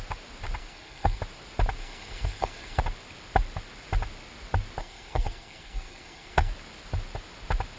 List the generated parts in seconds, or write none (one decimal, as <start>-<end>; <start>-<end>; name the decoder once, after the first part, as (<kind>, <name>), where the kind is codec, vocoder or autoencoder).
0.6-1.2 (codec, SNAC); 1.8-2.8; 4.8-6.5

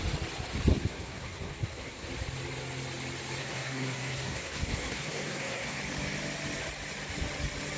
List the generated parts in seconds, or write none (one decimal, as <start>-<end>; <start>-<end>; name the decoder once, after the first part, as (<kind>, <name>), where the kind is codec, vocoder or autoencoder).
0.7-2.1 (codec, SNAC); 3.4-5.8

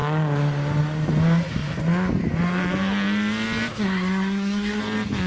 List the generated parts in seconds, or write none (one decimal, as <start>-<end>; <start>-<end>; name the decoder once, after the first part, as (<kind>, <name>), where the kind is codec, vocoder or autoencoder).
3.7-4.8 (codec, SNAC)